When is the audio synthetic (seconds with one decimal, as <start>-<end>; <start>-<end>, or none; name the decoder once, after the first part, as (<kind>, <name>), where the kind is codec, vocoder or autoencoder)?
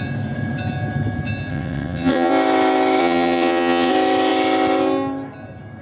1.5-2.3 (vocoder, WaveNeXt); 3.0-3.9